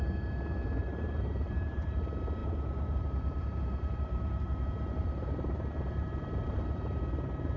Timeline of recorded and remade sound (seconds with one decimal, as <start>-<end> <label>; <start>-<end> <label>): 0.0-0.8 recorded; 0.8-2.0 remade; 2.0-2.4 recorded; 2.4-7.0 remade; 7.0-7.6 recorded